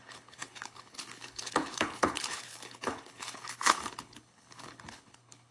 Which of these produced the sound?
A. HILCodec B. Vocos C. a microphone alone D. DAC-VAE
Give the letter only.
A